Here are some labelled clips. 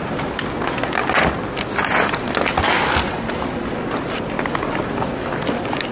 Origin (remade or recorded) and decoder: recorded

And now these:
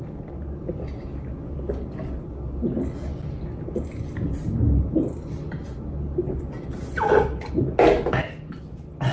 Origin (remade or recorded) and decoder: recorded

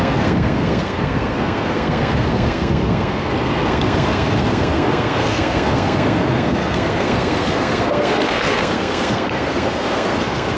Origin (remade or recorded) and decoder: remade, codec, SNAC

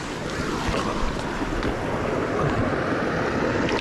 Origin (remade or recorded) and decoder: recorded